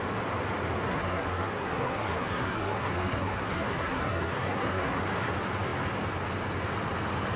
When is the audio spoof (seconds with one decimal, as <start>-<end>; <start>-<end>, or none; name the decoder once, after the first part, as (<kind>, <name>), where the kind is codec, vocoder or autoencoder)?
0.9-5.3 (codec, SNAC)